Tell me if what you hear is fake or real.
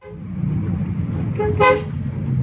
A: real